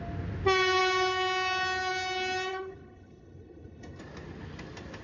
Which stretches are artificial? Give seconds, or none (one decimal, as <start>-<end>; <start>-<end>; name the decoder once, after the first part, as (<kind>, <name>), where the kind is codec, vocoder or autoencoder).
2.5-4.0 (codec, HILCodec)